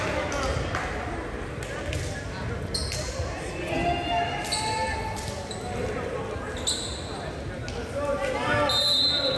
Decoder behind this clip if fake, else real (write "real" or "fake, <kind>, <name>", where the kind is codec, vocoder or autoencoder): real